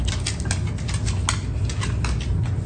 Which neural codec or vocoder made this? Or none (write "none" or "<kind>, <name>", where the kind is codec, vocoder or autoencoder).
none